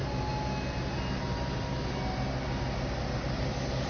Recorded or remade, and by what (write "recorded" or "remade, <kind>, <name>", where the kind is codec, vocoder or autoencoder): recorded